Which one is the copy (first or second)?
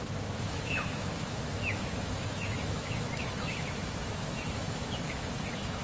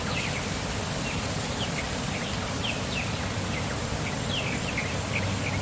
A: first